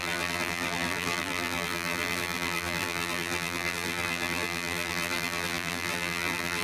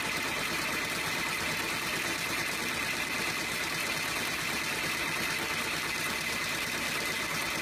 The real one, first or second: second